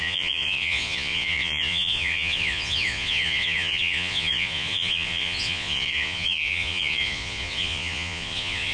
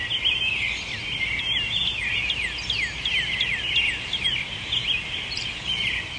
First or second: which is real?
second